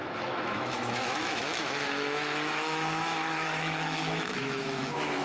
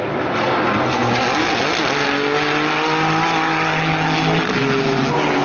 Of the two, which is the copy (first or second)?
first